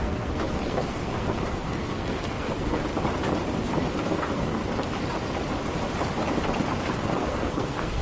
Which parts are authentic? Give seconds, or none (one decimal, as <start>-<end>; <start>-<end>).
2.8-4.0; 4.6-6.9